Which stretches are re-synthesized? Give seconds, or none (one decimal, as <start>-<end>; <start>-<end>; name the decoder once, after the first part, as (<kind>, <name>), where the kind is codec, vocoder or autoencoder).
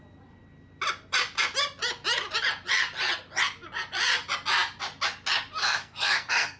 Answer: 5.6-6.6 (codec, SNAC)